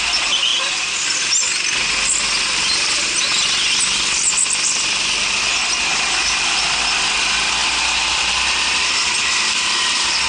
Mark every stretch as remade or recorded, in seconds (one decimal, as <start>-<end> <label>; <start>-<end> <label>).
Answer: 0.0-10.3 recorded